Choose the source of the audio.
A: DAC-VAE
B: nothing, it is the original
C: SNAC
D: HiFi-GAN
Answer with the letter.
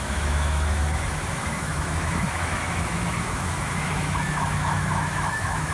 A